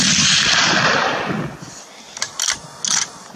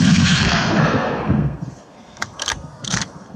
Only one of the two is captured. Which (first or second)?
first